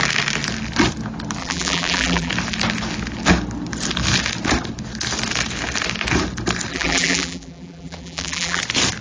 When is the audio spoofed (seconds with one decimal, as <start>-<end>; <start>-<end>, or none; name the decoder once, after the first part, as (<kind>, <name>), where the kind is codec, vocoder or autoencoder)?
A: 1.4-2.3 (vocoder, BigVGAN v2); 6.7-8.6